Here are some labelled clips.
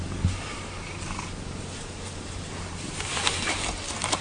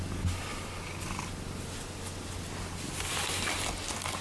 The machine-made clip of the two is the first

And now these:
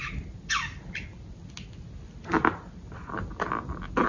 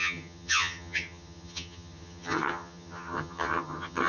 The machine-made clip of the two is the second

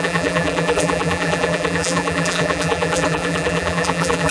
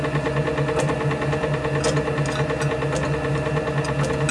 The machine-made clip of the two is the first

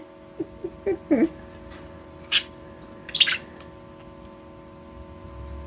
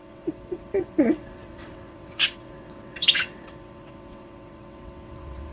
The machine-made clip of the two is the second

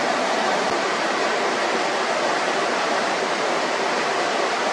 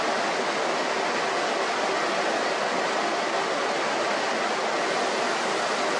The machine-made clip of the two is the first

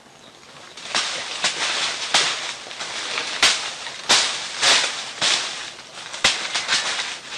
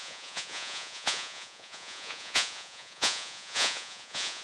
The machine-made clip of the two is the second